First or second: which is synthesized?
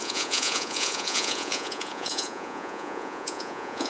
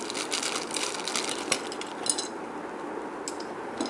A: first